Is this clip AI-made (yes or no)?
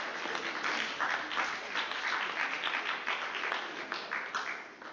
no